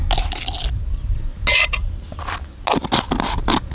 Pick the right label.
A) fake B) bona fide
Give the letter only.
B